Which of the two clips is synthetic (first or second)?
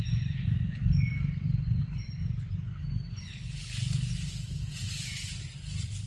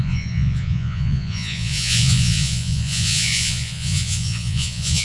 second